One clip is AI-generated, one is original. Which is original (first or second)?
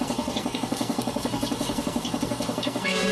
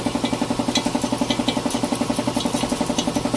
second